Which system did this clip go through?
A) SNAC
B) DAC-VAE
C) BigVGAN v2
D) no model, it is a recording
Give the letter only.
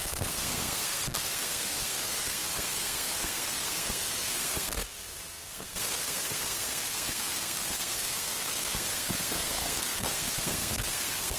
A